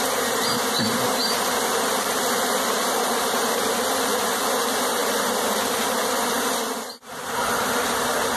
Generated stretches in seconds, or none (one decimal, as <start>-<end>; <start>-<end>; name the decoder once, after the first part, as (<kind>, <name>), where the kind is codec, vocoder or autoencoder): none